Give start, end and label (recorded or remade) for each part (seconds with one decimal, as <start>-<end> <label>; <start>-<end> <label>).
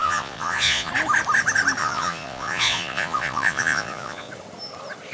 0.0-0.9 remade; 0.9-1.8 recorded; 1.8-4.3 remade; 4.3-5.1 recorded